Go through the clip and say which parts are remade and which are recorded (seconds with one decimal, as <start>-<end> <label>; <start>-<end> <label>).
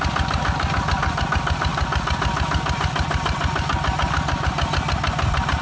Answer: 0.0-5.6 recorded